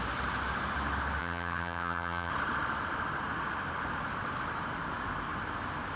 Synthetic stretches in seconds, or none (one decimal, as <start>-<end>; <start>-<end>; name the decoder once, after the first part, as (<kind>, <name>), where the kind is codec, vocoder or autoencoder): 1.2-2.3 (vocoder, HiFi-GAN)

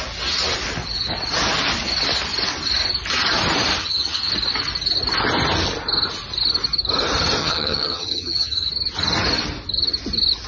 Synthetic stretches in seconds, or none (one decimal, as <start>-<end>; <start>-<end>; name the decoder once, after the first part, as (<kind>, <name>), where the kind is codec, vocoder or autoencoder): 3.8-4.3 (vocoder, HiFi-GAN); 7.4-8.7